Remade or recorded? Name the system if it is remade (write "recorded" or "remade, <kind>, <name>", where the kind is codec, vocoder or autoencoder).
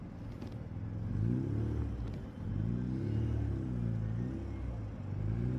recorded